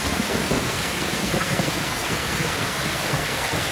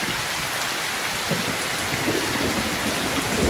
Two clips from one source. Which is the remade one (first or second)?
first